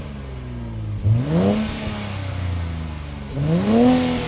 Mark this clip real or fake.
real